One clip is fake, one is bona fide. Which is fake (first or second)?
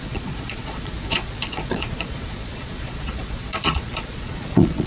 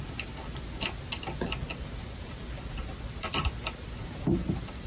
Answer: first